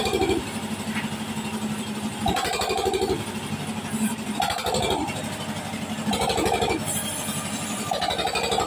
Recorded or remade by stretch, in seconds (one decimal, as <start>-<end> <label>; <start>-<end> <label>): 0.0-4.1 recorded; 4.1-7.9 remade; 7.9-8.7 recorded